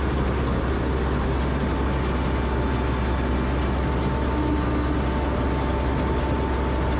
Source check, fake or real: real